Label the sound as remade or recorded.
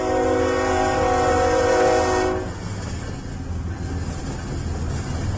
recorded